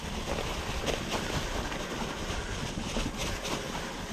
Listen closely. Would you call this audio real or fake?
real